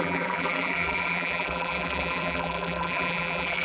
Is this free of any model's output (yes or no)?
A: no